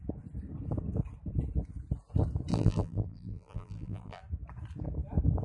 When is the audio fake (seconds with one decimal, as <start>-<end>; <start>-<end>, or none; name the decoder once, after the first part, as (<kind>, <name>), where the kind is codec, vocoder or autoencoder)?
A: 2.5-4.2 (vocoder, BigVGAN v2)

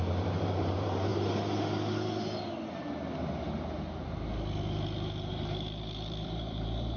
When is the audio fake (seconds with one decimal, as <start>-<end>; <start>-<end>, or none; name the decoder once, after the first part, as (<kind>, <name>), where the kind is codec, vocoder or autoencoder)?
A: 0.0-1.1 (vocoder, BigVGAN v2); 5.3-7.0

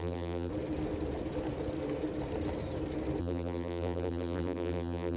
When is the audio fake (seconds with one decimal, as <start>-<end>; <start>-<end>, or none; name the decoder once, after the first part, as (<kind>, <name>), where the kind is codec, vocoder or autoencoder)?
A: 0.0-0.5 (vocoder, BigVGAN v2); 3.2-5.2

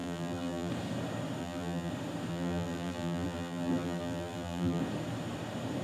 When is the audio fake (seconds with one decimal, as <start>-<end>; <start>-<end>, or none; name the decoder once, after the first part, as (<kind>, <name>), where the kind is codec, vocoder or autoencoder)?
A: 0.0-0.7 (vocoder, BigVGAN v2); 1.4-1.9; 2.3-4.8

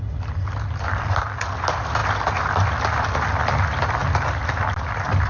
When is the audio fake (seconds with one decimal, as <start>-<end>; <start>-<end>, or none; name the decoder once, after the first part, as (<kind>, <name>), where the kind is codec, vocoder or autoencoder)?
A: 0.0-2.0 (vocoder, BigVGAN v2); 2.7-5.3

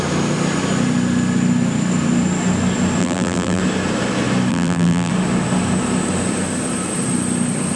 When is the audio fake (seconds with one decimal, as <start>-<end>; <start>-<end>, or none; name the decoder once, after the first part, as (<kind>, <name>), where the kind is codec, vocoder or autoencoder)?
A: 3.0-3.6 (vocoder, BigVGAN v2); 4.5-5.1

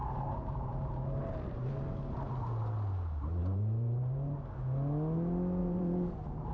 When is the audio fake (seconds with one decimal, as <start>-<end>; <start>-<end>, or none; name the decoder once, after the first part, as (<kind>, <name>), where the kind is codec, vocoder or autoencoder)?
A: 0.0-1.7 (vocoder, BigVGAN v2); 3.4-4.4; 5.6-6.5